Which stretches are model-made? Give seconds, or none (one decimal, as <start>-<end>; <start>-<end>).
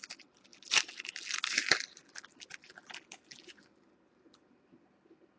none